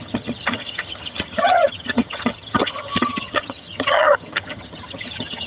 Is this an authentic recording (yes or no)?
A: no